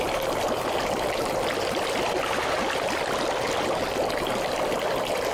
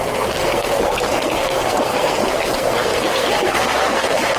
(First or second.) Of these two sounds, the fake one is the second